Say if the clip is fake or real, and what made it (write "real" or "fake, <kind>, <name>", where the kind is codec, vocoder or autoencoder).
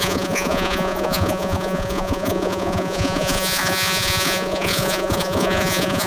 fake, vocoder, Vocos